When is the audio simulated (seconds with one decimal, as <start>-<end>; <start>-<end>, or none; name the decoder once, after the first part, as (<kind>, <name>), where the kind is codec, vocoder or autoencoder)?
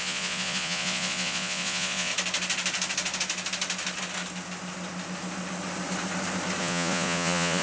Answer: 0.0-2.1 (vocoder, Vocos); 6.6-7.6